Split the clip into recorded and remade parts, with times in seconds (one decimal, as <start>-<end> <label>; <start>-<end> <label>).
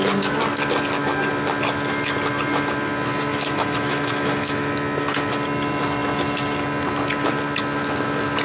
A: 0.0-3.3 recorded; 3.3-4.7 remade; 4.7-8.4 recorded